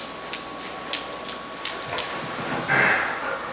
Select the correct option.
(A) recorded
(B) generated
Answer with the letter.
A